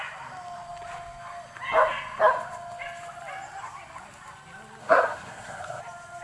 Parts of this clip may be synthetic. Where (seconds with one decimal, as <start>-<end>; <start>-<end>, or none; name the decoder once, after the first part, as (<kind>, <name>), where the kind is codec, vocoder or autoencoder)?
4.8-5.8 (codec, SNAC)

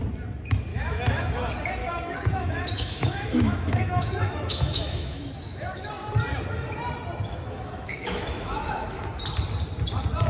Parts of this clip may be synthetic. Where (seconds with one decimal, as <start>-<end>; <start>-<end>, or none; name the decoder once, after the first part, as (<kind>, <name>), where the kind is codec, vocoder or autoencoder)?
0.7-1.3 (autoencoder, DAC-VAE); 1.8-5.9; 7.3-9.0

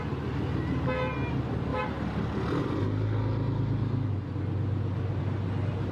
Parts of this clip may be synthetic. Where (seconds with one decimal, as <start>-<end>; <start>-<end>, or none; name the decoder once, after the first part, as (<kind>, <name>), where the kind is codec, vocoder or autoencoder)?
none